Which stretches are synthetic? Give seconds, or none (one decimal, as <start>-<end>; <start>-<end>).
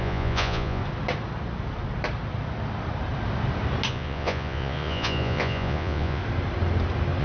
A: 0.0-0.8; 3.9-6.2